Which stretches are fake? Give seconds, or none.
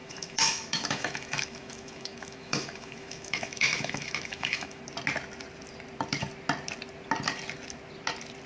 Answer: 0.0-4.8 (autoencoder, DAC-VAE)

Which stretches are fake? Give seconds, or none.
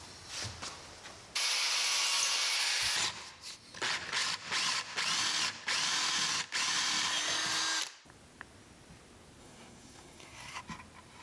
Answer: 9.4-10.6 (codec, SNAC)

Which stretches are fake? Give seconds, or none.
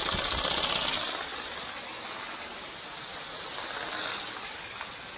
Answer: none